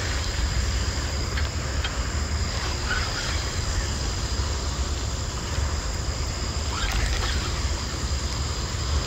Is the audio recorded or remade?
recorded